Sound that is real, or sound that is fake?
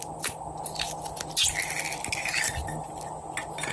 real